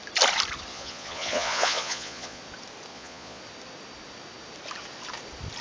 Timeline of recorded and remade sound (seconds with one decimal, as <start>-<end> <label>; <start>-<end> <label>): 0.0-0.7 recorded; 0.7-2.4 remade; 2.4-2.9 recorded; 2.9-3.4 remade; 3.4-5.6 recorded